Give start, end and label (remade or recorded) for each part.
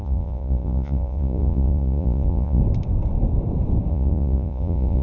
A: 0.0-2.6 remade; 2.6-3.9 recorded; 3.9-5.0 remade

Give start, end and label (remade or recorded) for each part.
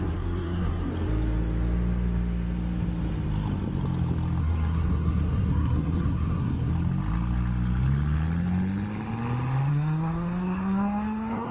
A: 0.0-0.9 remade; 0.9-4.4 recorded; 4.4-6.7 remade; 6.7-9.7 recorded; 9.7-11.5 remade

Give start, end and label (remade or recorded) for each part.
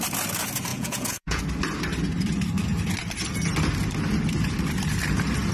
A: 0.0-0.7 recorded; 0.7-1.4 remade; 1.4-5.5 recorded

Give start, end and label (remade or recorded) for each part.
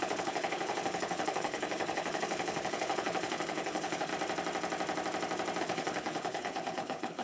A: 0.0-4.1 remade; 4.1-5.6 recorded; 5.6-7.2 remade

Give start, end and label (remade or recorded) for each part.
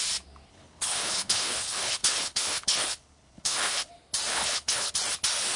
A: 0.0-0.5 recorded; 0.5-3.9 remade; 3.9-4.3 recorded; 4.3-4.9 remade; 4.9-5.6 recorded